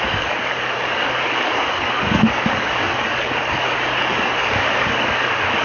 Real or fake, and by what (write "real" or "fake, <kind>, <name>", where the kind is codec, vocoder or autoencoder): fake, codec, DAC